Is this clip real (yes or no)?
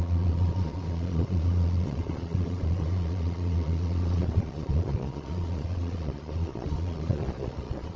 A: no